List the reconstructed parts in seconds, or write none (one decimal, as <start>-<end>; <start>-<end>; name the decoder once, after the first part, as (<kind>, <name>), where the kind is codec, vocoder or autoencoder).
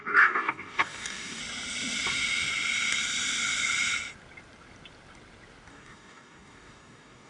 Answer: 0.0-1.4 (codec, DAC); 5.7-7.3